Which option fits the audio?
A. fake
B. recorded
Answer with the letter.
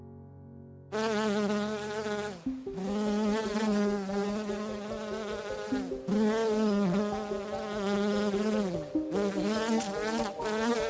B